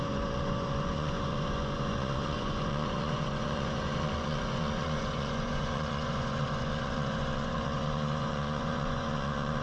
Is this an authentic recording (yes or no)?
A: no